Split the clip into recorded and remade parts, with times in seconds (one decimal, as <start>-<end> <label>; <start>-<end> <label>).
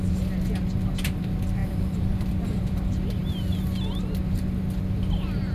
0.0-1.6 recorded; 1.6-2.7 remade; 2.7-5.5 recorded